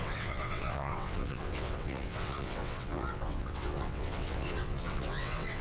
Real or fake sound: fake